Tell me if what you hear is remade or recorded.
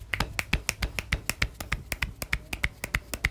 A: recorded